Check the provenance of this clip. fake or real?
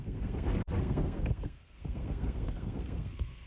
fake